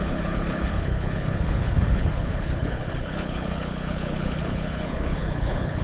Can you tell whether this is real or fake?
fake